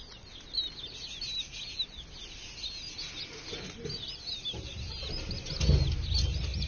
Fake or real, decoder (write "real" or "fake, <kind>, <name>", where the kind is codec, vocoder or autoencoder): real